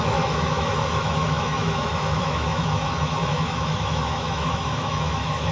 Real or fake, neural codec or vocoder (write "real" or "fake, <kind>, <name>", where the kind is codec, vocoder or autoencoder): fake, autoencoder, DAC-VAE